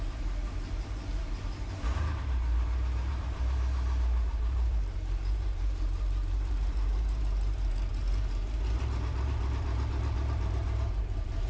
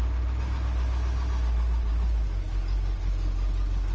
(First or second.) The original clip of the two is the second